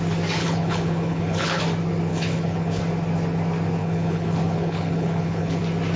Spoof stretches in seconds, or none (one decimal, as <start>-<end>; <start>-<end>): 0.4-1.6; 2.1-2.8; 3.8-5.6

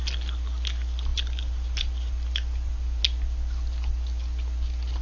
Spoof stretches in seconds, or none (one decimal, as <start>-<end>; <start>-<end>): none

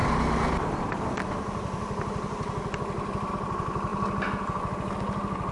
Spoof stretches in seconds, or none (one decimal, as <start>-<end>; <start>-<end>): none

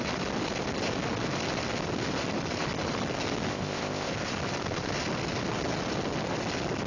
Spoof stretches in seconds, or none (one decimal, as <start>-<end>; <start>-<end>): 3.5-4.1

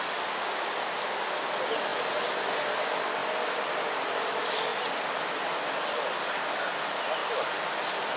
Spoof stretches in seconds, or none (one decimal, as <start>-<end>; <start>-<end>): none

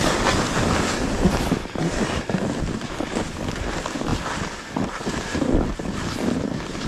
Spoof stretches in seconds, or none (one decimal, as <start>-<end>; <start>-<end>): none

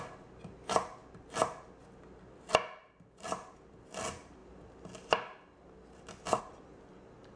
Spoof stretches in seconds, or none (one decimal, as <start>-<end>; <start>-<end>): none

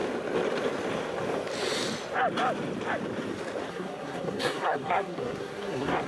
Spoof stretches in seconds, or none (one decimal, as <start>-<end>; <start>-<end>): 3.7-6.1